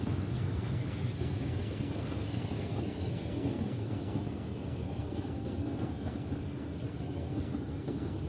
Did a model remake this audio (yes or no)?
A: yes